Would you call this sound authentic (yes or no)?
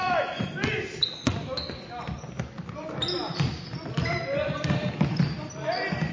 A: yes